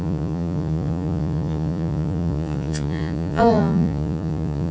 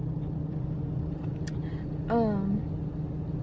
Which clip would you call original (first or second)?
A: second